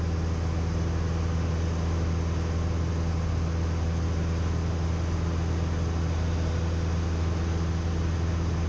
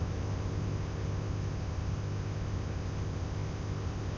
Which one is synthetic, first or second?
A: second